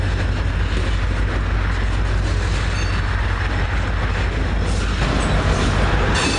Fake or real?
real